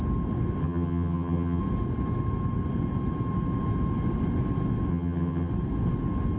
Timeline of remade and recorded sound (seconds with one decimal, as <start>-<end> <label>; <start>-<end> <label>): 0.0-0.6 recorded; 0.6-1.6 remade; 1.6-4.9 recorded; 4.9-5.5 remade; 5.5-6.4 recorded